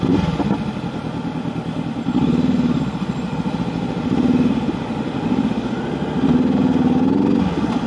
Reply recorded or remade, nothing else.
recorded